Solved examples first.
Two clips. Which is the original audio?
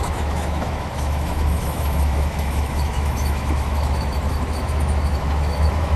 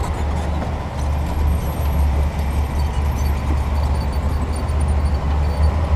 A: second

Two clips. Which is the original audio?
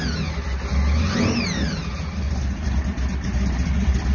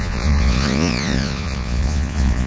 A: first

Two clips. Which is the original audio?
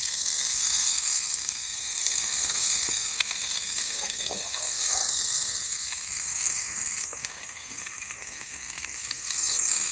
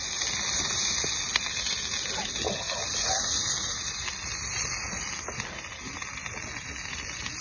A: second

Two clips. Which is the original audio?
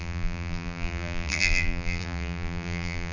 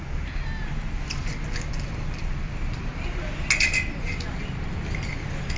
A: second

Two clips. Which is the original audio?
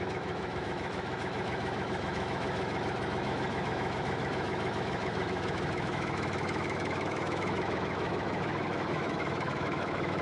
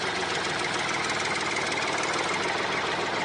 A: second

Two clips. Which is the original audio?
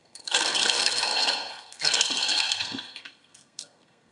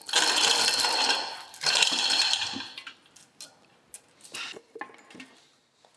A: second